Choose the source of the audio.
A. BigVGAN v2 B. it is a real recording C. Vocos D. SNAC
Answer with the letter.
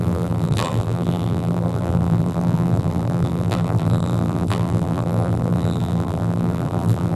A